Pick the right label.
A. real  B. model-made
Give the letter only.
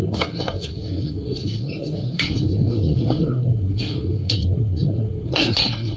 B